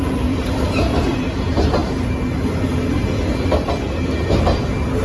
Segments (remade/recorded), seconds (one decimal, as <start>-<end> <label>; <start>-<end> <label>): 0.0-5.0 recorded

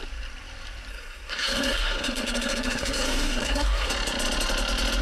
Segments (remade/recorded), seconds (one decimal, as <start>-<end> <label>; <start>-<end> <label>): 0.0-0.9 recorded; 0.9-3.9 remade; 3.9-5.0 recorded

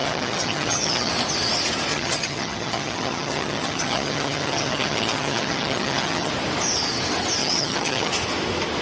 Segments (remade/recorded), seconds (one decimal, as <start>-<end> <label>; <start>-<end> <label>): 0.0-1.1 remade; 1.1-1.9 recorded; 1.9-6.3 remade; 6.3-7.4 recorded; 7.4-8.1 remade; 8.1-8.8 recorded